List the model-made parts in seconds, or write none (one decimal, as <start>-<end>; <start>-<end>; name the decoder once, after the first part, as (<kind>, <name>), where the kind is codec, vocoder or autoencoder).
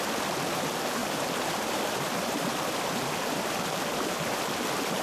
1.0-3.8 (vocoder, BigVGAN v2)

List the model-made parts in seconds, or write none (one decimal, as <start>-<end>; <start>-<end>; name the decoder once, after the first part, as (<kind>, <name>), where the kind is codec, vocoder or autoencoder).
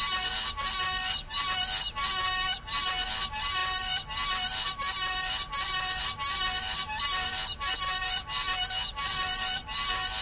none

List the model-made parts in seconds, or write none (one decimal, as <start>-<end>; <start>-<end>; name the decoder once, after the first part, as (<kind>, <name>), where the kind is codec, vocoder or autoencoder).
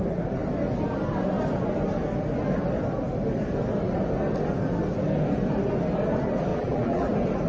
6.5-7.1 (vocoder, BigVGAN v2)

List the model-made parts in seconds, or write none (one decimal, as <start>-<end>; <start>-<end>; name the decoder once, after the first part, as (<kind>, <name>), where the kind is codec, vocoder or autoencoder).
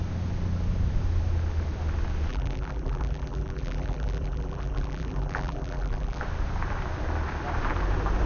2.3-6.2 (vocoder, BigVGAN v2)